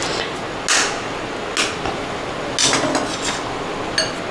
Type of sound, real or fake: real